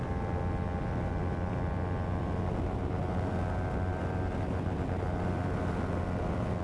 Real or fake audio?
real